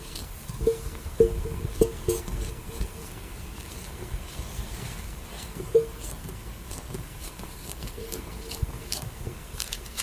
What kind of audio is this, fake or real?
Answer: fake